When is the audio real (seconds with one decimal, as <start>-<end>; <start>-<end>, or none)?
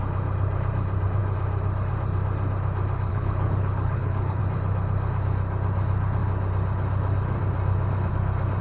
0.0-3.1; 4.4-8.6